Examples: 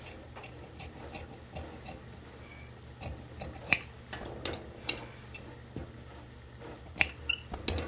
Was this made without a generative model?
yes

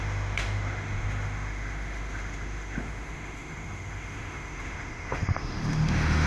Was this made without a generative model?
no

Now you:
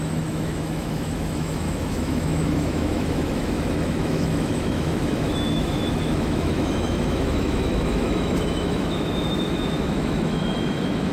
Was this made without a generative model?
no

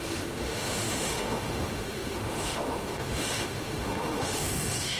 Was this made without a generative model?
no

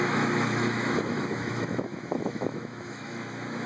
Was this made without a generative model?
no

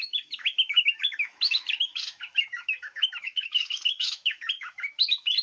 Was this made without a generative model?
no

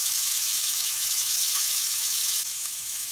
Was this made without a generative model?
no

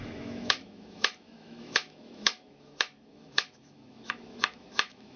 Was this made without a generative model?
no